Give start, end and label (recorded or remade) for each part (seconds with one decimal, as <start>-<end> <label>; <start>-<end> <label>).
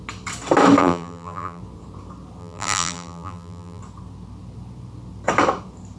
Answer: 0.0-0.8 recorded; 0.8-1.6 remade; 1.6-2.4 recorded; 2.4-3.8 remade; 3.8-6.0 recorded